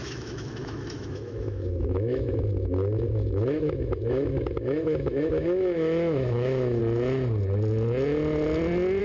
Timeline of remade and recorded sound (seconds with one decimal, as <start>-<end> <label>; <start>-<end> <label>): 0.0-6.8 remade; 6.8-9.0 recorded